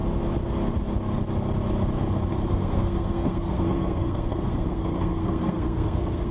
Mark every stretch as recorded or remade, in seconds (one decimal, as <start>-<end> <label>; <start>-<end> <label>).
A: 0.0-2.5 recorded; 2.5-6.3 remade